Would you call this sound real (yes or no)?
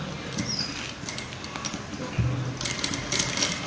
yes